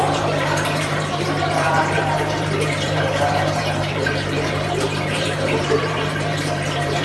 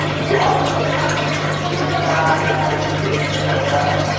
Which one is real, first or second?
second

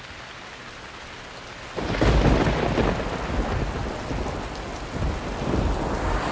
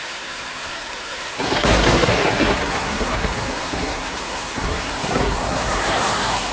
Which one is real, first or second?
first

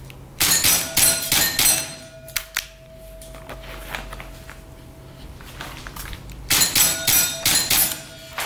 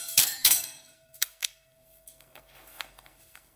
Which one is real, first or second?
first